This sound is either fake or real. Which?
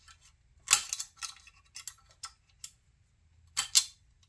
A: real